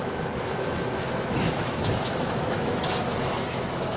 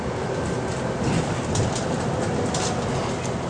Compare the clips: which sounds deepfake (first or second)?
first